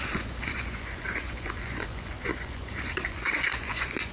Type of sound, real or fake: fake